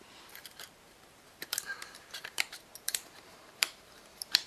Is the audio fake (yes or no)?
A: yes